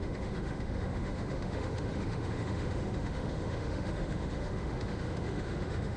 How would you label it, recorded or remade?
remade